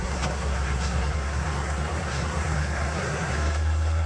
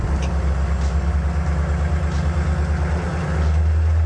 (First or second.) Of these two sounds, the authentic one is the second